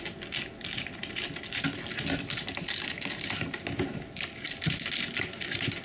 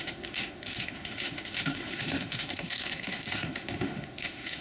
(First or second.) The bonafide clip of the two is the first